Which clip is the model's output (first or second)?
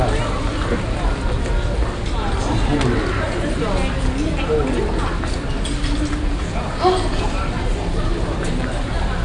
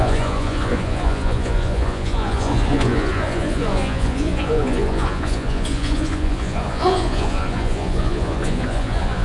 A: second